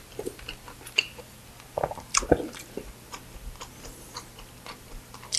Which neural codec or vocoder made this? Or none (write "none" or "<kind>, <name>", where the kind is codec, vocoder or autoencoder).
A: none